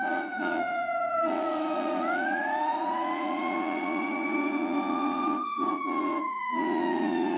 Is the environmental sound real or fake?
fake